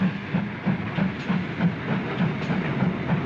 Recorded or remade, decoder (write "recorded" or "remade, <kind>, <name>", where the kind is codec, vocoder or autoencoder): recorded